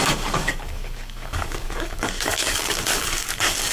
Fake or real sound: fake